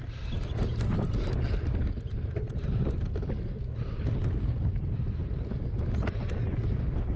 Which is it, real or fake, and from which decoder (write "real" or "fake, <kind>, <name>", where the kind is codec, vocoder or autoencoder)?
real